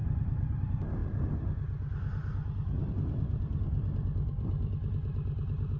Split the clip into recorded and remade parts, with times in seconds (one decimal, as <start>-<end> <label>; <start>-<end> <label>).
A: 0.0-5.8 recorded